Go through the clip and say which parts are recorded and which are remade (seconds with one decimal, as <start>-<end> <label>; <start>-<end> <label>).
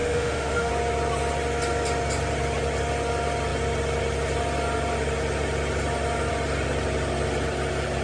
0.0-0.7 remade; 0.7-8.0 recorded